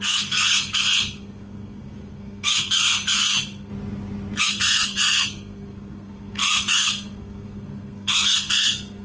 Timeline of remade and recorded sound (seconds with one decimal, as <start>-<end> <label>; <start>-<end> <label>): 0.0-3.7 remade; 3.7-4.4 recorded; 4.4-9.0 remade